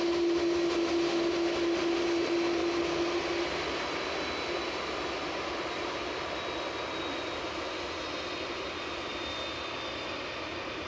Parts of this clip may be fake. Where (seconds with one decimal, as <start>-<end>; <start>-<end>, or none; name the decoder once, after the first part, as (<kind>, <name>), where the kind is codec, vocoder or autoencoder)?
none